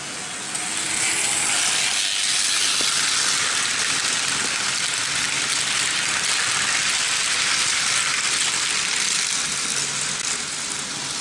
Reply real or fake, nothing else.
real